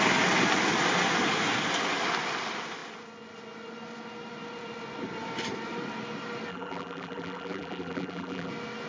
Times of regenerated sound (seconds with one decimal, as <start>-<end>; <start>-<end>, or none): 6.5-8.5